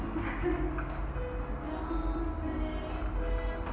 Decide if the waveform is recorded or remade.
recorded